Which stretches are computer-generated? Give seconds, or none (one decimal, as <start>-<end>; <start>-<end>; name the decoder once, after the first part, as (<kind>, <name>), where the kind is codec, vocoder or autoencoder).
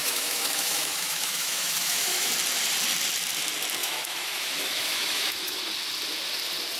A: 0.0-2.3 (autoencoder, DAC-VAE); 3.8-5.6